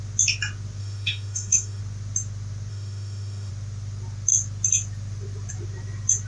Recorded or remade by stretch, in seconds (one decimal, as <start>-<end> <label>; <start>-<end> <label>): 0.0-0.8 recorded; 0.8-1.8 remade; 1.8-2.7 recorded; 2.7-3.5 remade; 3.5-6.3 recorded